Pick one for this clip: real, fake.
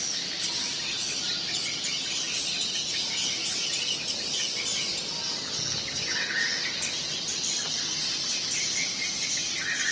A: real